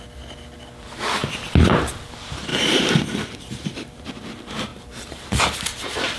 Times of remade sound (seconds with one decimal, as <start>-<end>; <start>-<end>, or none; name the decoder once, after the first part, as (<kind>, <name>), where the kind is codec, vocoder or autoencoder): 2.5-4.1 (vocoder, BigVGAN v2); 4.7-6.2